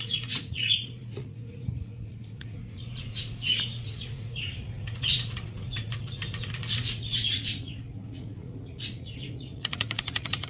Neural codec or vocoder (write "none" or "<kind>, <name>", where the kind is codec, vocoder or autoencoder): vocoder, Vocos